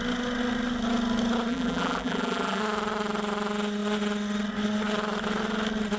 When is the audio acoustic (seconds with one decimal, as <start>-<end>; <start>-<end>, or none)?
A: 0.0-1.5; 2.6-6.0